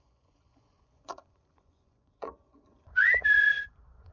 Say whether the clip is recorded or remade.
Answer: remade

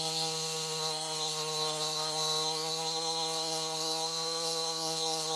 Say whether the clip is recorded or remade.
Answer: remade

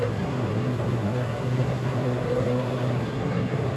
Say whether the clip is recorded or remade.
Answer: remade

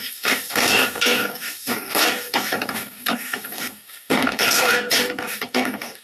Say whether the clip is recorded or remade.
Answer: remade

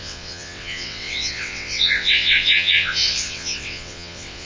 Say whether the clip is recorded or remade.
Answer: remade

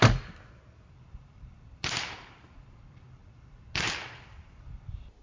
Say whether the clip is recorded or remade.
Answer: remade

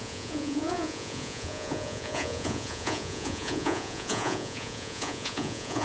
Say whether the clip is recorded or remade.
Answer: remade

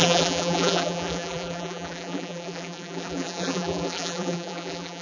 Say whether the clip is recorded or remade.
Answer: remade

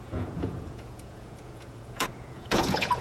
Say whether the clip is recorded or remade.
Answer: remade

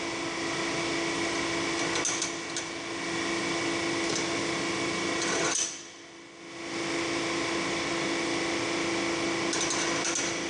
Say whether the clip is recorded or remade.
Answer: recorded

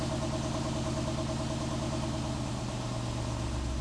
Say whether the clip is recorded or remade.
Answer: recorded